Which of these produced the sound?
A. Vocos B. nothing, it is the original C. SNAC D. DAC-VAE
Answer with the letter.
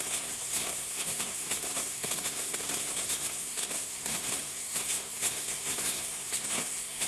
C